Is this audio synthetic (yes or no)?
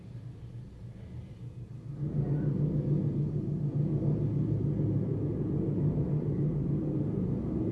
no